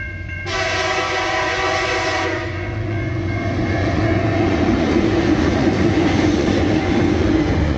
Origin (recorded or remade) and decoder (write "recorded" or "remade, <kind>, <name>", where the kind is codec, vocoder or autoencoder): remade, vocoder, Vocos